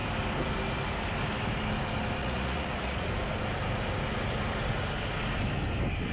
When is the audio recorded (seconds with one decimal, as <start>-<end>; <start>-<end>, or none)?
0.0-2.2; 3.1-6.1